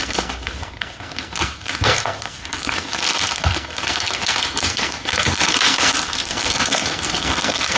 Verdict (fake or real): fake